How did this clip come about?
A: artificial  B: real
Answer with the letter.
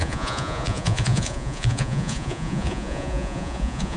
A